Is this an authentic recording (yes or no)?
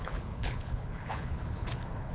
no